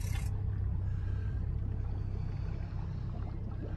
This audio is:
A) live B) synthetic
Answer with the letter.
A